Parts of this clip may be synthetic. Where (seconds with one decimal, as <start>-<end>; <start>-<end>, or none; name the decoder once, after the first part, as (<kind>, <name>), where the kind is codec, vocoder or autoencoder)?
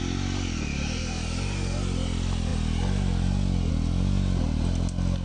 1.0-1.8 (codec, DAC)